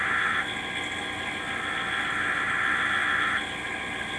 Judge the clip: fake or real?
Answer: real